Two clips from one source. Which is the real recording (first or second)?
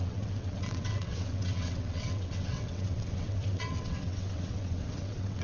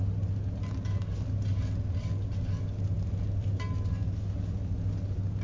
second